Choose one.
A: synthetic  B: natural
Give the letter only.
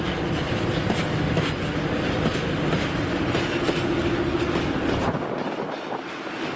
B